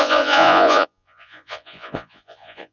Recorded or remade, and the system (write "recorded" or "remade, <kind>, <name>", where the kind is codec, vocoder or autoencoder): remade, vocoder, Vocos